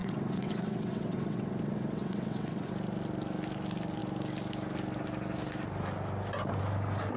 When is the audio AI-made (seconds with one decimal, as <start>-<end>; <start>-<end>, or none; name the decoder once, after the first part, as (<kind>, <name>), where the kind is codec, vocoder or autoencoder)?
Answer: 0.0-2.7 (vocoder, WaveNeXt)